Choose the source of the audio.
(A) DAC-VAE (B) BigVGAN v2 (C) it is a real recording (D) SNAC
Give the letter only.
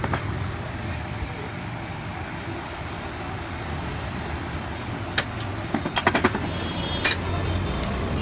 C